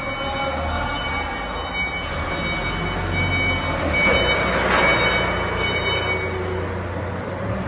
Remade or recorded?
recorded